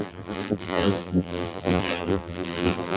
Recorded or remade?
remade